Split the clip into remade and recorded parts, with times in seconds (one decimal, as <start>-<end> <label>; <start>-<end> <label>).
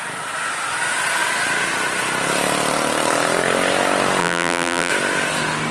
0.0-4.2 recorded; 4.2-4.9 remade; 4.9-5.7 recorded